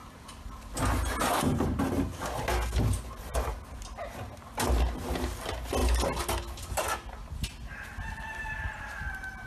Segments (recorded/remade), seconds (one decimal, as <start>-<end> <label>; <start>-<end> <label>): 0.0-9.5 recorded